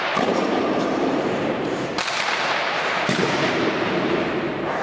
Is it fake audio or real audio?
fake